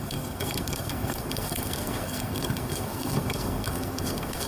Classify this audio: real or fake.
fake